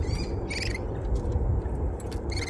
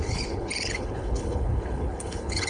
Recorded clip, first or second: first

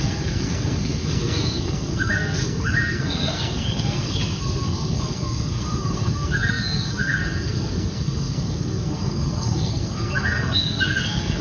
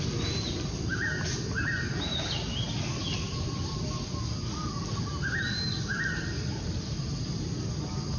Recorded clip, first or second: second